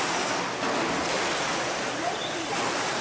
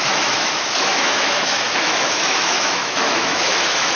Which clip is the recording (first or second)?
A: first